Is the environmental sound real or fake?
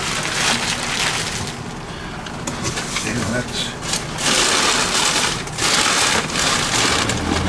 real